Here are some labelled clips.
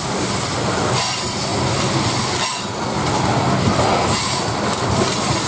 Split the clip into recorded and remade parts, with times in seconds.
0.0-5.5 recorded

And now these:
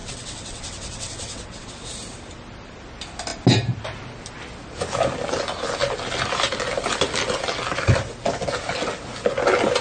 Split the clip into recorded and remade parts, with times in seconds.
0.0-1.7 remade; 1.7-9.8 recorded

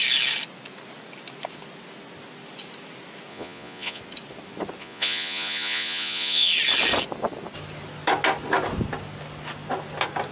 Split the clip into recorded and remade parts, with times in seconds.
0.0-3.3 recorded; 3.3-4.0 remade; 4.0-4.8 recorded; 4.8-6.5 remade; 6.5-10.3 recorded